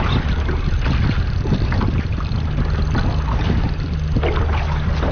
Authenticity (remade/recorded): recorded